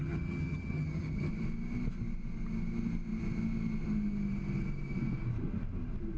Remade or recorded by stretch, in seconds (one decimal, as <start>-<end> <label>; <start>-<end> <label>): 0.0-1.3 remade; 1.3-6.2 recorded